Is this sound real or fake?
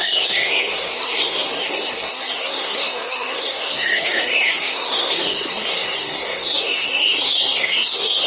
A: fake